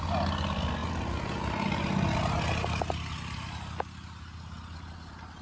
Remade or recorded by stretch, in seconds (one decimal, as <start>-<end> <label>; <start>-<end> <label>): 0.0-5.4 recorded